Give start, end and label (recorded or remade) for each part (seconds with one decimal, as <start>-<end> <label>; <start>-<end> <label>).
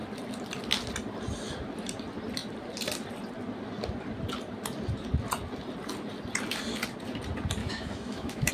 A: 0.0-7.6 recorded; 7.6-8.5 remade